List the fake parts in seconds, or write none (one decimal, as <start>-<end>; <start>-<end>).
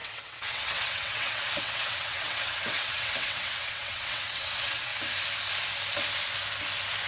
0.0-4.9